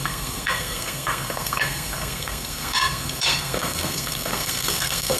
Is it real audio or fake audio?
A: fake